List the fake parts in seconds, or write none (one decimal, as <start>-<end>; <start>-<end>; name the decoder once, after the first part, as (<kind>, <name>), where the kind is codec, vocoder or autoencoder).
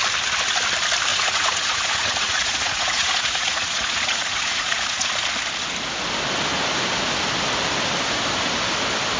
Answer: 1.1-5.1 (vocoder, Vocos)